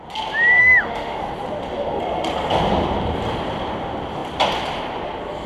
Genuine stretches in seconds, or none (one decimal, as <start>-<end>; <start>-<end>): 0.0-0.6; 1.2-5.5